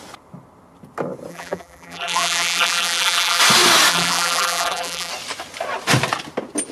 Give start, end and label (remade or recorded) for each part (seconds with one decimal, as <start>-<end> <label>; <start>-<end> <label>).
0.0-1.3 recorded; 1.3-3.4 remade; 3.4-3.9 recorded; 3.9-5.1 remade; 5.1-6.7 recorded